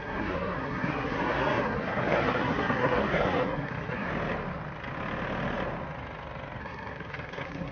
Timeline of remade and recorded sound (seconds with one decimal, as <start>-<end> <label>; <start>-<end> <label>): 0.0-4.1 remade; 4.1-6.6 recorded; 6.6-7.7 remade